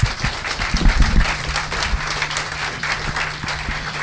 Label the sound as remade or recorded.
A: remade